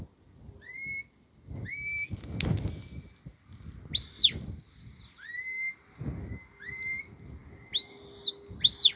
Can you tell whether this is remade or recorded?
recorded